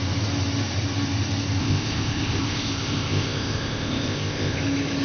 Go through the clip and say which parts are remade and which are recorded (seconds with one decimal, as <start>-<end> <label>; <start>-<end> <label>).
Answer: 0.0-1.6 recorded; 1.6-4.6 remade; 4.6-5.0 recorded